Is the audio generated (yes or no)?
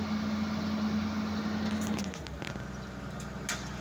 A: no